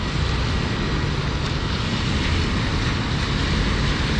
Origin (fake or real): real